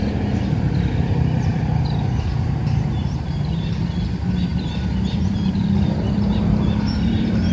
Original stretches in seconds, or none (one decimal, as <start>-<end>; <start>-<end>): 0.0-1.5; 3.8-4.5